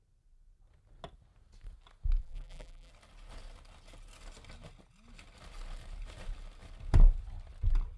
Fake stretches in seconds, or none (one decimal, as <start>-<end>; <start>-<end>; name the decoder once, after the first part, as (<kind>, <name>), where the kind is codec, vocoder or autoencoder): 2.2-2.9 (vocoder, BigVGAN v2)